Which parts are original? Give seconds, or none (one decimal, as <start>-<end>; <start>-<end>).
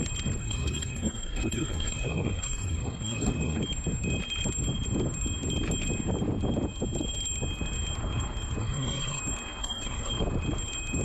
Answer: 0.0-0.4; 3.6-8.6; 9.2-9.6; 10.1-11.0